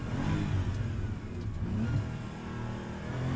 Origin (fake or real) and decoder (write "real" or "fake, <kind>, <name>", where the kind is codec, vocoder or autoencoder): real